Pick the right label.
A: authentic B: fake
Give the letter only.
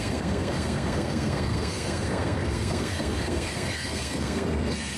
B